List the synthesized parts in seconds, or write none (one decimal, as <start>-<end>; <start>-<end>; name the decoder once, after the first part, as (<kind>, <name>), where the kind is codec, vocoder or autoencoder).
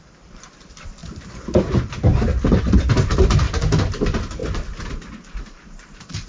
none